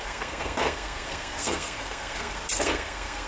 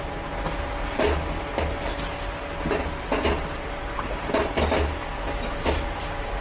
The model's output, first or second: first